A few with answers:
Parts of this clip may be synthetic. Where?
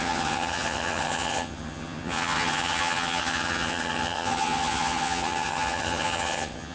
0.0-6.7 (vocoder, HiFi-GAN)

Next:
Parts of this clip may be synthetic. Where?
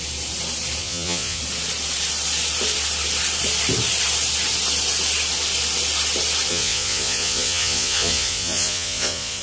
0.8-1.4 (vocoder, Vocos); 6.5-9.4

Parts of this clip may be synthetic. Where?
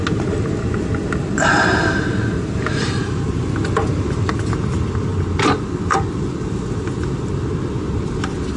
none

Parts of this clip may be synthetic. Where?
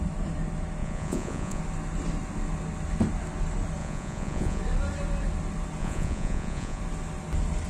0.8-1.6 (vocoder, Vocos); 3.8-4.6; 5.8-6.8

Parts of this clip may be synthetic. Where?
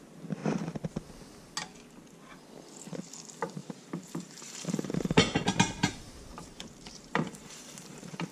3.6-8.3 (vocoder, BigVGAN v2)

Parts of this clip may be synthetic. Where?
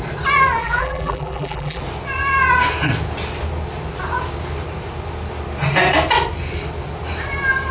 0.6-1.8 (vocoder, BigVGAN v2)